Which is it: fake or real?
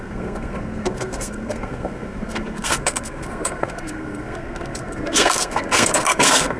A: fake